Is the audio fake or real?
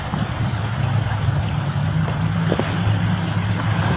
real